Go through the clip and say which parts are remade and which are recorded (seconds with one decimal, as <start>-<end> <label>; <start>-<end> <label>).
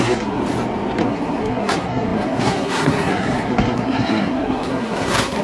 0.0-0.4 remade; 0.4-1.0 recorded; 1.0-5.4 remade